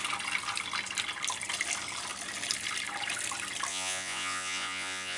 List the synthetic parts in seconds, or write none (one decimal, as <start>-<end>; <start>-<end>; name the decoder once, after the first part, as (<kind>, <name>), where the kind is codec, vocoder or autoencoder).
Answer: 3.7-5.2 (vocoder, Vocos)